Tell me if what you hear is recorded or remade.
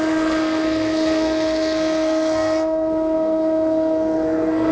remade